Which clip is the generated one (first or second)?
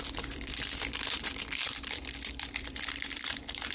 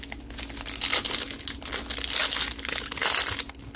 first